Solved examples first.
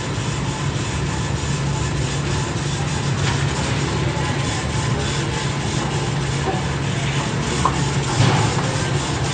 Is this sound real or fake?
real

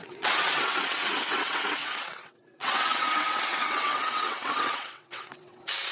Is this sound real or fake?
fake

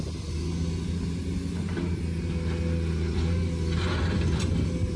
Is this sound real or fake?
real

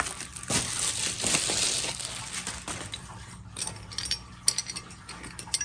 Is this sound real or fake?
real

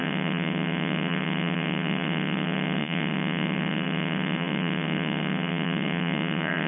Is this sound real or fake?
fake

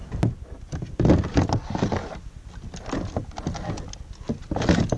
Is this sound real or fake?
real